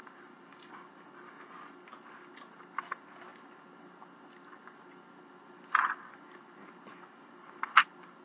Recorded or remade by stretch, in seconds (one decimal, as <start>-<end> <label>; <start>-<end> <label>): 0.0-0.7 remade; 0.7-8.2 recorded